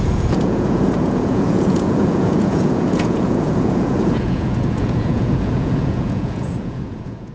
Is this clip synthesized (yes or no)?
yes